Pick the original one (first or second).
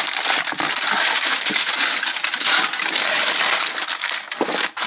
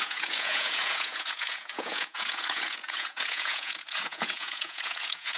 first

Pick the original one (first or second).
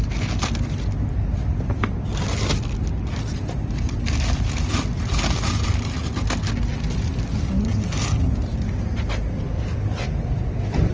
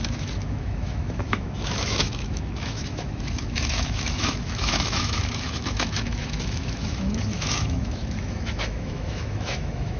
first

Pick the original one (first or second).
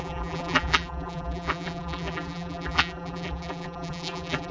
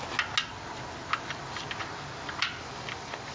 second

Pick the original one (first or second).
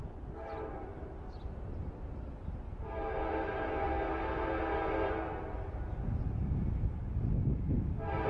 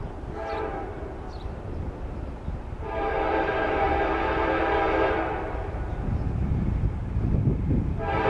first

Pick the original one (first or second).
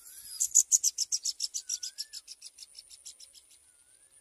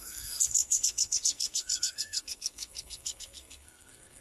first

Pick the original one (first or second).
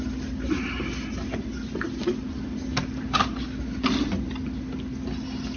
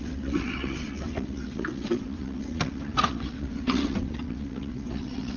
first